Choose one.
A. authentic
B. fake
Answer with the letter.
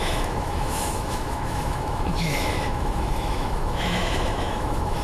B